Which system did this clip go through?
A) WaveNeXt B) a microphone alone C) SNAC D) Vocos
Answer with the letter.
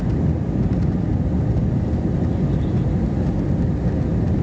B